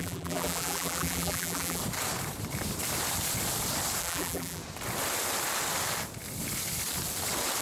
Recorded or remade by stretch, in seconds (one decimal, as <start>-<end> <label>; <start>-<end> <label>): 0.0-1.8 remade; 1.8-4.0 recorded; 4.0-4.6 remade; 4.6-7.6 recorded